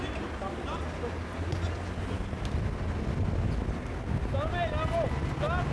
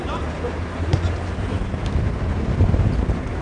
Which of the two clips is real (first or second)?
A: first